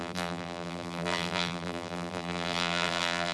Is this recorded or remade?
remade